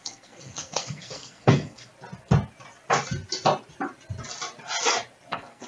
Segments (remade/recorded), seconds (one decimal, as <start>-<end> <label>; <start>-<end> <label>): 0.0-1.9 remade; 1.9-5.3 recorded; 5.3-5.7 remade